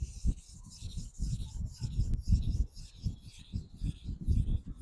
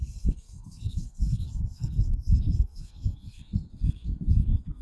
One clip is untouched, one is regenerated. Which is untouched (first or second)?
first